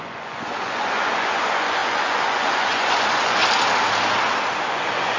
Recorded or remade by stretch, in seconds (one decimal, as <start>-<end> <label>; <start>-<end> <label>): 0.0-3.4 remade; 3.4-4.7 recorded; 4.7-5.2 remade